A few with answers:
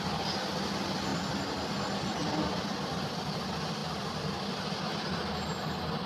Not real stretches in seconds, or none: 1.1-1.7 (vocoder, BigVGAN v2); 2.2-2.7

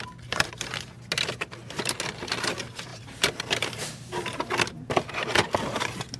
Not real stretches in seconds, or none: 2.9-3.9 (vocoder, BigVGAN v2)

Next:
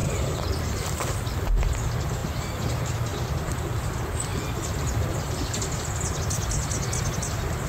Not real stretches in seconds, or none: 0.0-0.6 (vocoder, BigVGAN v2); 3.1-3.8; 4.3-5.1

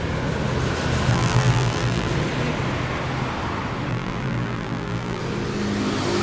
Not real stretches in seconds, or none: 1.1-2.1 (vocoder, BigVGAN v2); 3.9-5.2

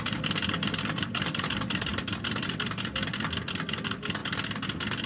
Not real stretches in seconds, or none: 0.0-4.2 (vocoder, BigVGAN v2)

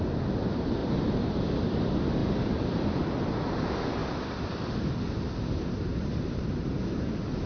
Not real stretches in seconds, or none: 0.8-1.6 (vocoder, BigVGAN v2); 2.2-3.0; 5.4-6.5

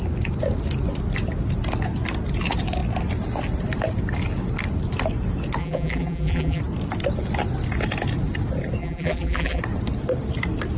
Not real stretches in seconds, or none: 5.6-6.6 (vocoder, BigVGAN v2); 8.8-9.6

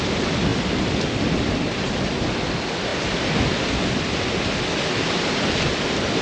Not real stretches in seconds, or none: none